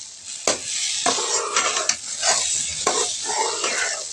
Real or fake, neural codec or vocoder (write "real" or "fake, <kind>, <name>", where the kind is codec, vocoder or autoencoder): real